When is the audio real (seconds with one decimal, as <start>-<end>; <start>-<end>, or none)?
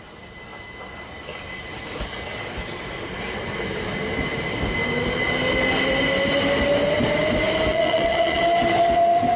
0.0-7.7; 8.4-9.4